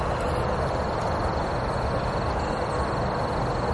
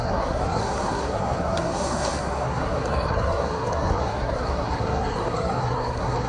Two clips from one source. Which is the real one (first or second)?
first